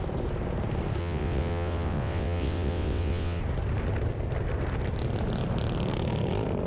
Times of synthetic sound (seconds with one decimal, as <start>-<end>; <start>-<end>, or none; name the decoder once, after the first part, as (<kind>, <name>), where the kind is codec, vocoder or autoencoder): 1.0-3.4 (vocoder, WaveNeXt)

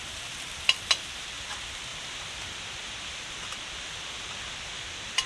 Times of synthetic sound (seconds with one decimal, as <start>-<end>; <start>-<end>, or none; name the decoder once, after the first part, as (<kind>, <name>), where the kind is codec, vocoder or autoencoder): none

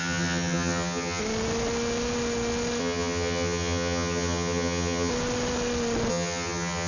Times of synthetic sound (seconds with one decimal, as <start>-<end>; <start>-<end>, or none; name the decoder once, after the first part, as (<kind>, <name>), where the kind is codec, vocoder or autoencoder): 0.0-1.2 (vocoder, HiFi-GAN); 2.8-5.1; 6.1-6.9

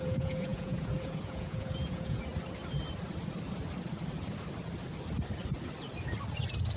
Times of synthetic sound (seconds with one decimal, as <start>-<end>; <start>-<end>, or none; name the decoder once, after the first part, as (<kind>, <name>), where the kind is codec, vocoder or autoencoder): 0.0-2.3 (vocoder, Vocos)

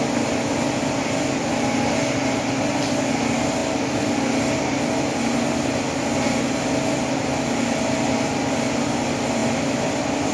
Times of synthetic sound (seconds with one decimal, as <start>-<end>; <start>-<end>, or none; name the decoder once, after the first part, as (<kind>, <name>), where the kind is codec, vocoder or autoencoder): none

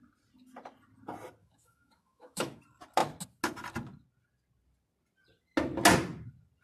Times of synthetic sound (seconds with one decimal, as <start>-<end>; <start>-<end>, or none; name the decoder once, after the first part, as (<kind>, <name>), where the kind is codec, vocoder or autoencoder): 1.4-2.6 (autoencoder, DAC-VAE)

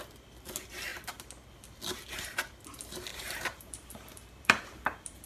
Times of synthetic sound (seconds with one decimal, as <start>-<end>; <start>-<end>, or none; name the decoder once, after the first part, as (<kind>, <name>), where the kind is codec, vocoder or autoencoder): 3.1-5.3 (vocoder, BigVGAN v2)